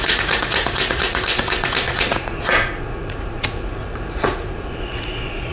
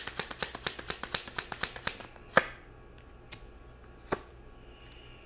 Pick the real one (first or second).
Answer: second